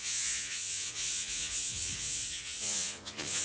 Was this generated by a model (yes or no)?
yes